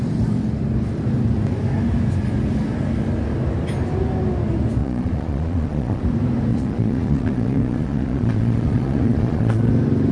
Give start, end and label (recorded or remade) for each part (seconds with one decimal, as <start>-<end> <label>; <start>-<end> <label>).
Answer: 0.0-4.8 recorded; 4.8-6.0 remade; 6.0-6.5 recorded; 6.5-9.7 remade; 9.7-10.1 recorded